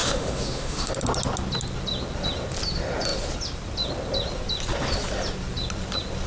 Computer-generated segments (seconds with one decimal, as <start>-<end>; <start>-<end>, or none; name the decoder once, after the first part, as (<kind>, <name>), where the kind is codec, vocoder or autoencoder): 0.0-0.9 (autoencoder, DAC-VAE)